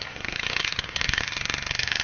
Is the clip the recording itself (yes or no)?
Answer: no